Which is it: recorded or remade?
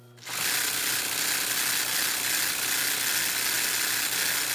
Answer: recorded